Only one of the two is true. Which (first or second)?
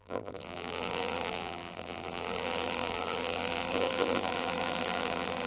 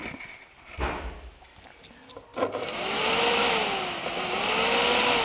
second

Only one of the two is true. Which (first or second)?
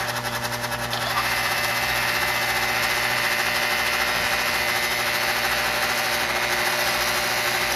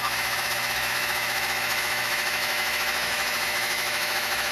first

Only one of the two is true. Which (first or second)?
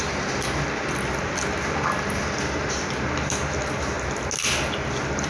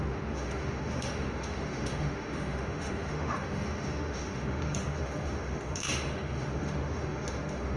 first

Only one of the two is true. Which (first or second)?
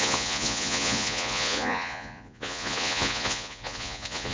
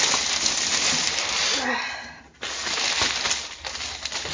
second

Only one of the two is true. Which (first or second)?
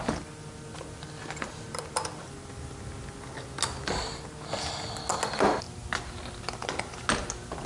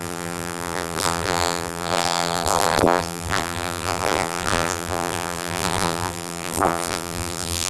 first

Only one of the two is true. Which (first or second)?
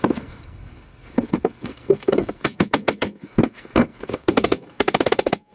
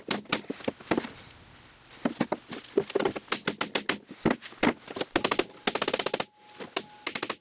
second